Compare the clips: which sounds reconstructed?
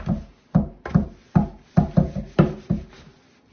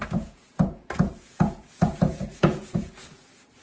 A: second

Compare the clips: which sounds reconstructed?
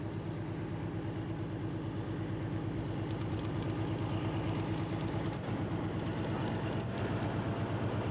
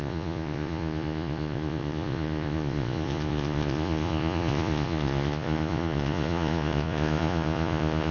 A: second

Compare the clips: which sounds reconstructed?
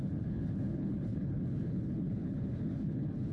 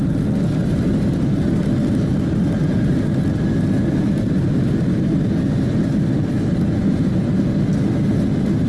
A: first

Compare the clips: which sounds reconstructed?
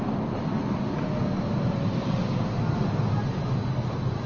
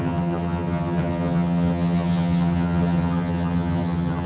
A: second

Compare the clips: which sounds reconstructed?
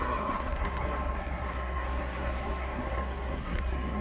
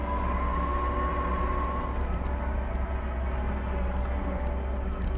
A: first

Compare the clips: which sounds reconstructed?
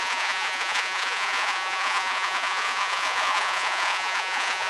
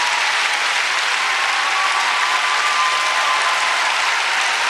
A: first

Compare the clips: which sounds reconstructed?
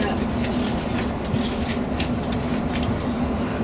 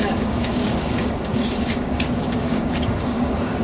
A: second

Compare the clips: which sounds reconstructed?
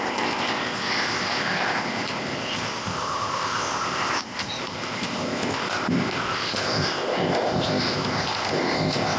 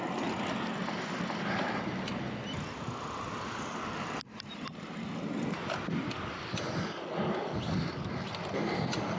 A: first